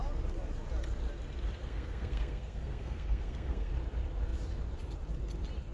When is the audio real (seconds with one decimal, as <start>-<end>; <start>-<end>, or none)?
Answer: 0.0-1.6; 3.7-5.7